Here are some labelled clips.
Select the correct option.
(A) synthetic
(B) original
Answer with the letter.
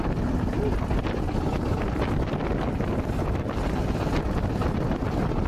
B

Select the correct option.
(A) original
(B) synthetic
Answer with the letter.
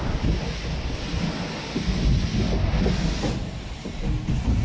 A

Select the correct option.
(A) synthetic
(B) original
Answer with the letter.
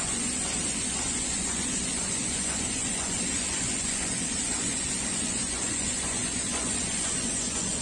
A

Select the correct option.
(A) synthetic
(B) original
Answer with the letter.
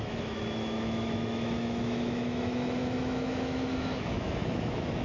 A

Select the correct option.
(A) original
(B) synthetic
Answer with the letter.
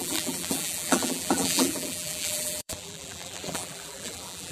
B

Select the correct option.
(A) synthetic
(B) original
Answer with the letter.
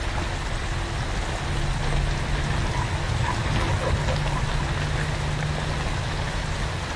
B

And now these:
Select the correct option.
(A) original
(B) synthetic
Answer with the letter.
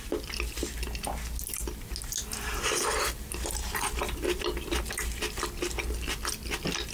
A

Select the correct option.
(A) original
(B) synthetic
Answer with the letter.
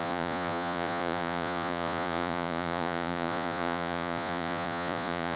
B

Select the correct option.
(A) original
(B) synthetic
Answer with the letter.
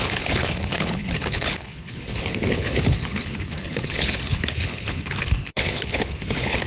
B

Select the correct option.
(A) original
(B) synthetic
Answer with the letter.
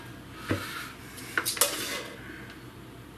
A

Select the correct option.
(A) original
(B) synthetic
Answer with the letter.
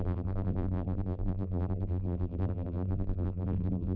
B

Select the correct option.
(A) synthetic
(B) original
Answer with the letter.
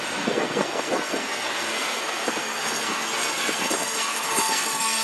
A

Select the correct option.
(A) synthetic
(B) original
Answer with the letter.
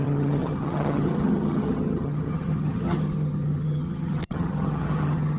A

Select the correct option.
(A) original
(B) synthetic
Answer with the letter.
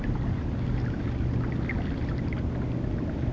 A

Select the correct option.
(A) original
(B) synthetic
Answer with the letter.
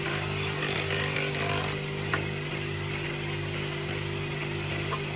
A